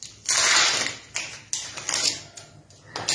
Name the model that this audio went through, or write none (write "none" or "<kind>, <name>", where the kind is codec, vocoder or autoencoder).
none